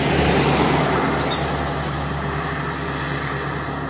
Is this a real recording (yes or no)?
yes